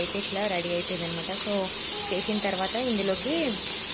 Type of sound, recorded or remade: recorded